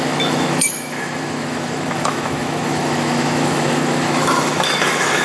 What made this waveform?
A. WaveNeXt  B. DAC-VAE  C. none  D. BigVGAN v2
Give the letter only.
B